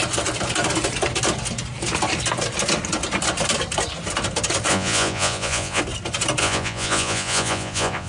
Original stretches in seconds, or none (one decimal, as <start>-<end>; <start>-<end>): 0.0-4.7; 5.8-6.4